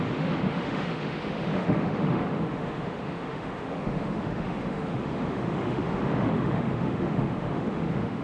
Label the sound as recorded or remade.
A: remade